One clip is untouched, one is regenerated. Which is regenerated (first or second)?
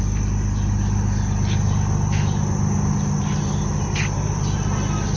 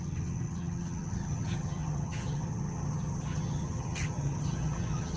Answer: second